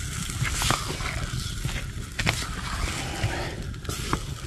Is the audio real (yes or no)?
yes